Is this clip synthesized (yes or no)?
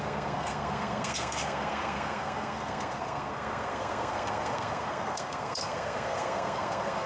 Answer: yes